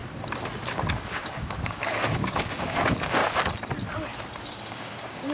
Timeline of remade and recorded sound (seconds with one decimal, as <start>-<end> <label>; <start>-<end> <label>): 0.0-0.9 recorded; 0.9-3.2 remade; 3.2-4.6 recorded; 4.6-5.3 remade